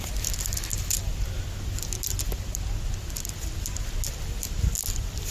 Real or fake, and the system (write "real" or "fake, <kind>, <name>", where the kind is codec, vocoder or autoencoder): real